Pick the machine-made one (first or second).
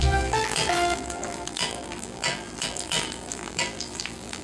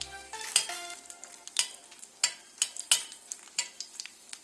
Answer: first